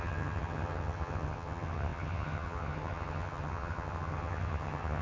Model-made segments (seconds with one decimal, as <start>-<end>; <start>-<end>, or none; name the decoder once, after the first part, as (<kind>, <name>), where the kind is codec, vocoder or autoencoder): 0.0-5.0 (vocoder, HiFi-GAN)

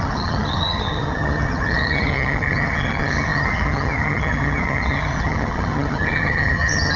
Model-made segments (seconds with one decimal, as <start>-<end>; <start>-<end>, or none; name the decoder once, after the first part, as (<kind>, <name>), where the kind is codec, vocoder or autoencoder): 0.0-7.0 (vocoder, HiFi-GAN)